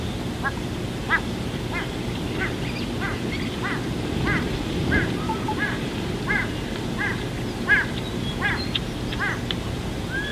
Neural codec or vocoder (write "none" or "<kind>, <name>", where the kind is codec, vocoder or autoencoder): none